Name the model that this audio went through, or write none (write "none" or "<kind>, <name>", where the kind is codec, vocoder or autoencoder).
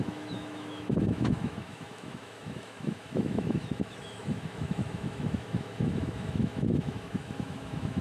autoencoder, DAC-VAE